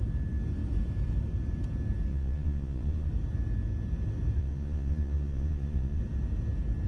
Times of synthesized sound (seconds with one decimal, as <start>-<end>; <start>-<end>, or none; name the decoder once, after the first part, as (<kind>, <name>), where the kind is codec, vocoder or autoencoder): 2.1-3.1 (vocoder, Vocos); 4.4-6.0